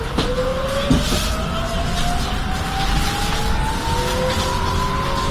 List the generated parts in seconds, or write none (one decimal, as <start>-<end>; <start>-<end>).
none